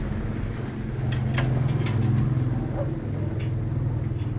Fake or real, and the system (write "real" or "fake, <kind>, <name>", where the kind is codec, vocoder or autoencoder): real